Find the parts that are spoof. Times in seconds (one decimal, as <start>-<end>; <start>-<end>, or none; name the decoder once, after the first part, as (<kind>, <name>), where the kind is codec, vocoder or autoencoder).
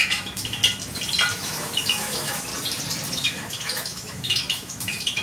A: 0.0-0.6 (autoencoder, DAC-VAE); 1.3-2.5; 3.1-5.2